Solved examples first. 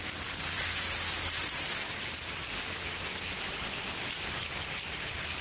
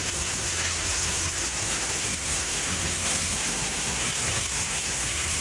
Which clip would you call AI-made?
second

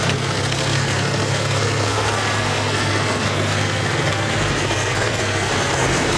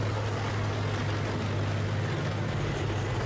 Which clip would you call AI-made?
first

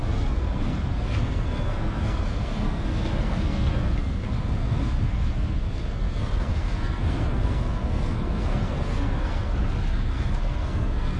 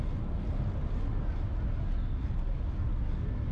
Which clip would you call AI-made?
first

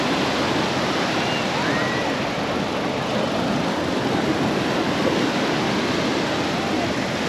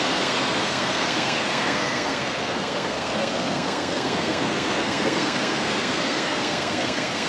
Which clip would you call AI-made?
second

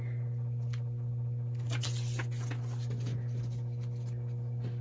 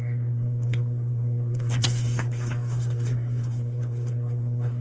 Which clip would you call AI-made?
second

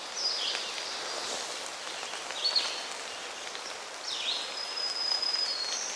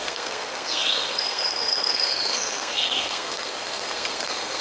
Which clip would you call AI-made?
second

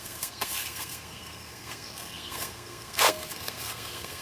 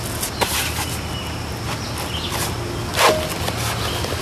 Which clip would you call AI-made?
first